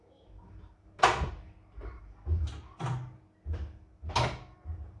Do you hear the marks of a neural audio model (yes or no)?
no